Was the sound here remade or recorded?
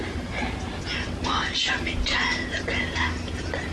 recorded